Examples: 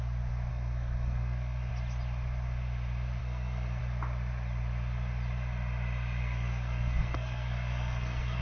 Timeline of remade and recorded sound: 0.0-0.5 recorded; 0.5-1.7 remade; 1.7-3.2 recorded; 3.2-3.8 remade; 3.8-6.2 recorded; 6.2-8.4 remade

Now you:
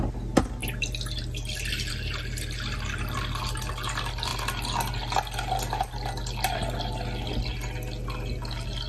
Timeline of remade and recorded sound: 0.0-8.9 recorded

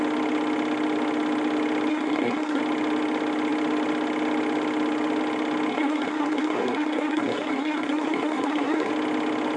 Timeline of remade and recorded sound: 0.0-1.9 recorded; 1.9-2.6 remade; 2.6-5.7 recorded; 5.7-8.9 remade; 8.9-9.6 recorded

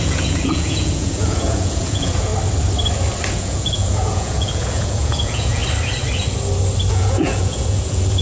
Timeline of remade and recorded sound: 0.0-2.3 remade; 2.3-3.3 recorded; 3.3-5.6 remade; 5.6-6.9 recorded; 6.9-8.2 remade